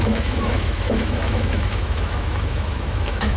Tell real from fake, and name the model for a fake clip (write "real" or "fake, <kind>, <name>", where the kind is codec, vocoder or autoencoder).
fake, autoencoder, DAC-VAE